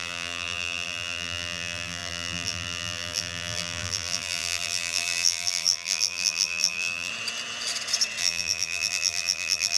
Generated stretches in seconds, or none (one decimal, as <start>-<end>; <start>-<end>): 0.0-7.1; 8.2-9.8